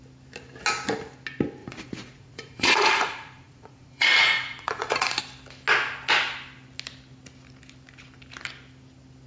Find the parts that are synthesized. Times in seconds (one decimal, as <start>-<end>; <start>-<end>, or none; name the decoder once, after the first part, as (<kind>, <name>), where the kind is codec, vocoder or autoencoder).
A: 1.6-5.2 (vocoder, Vocos)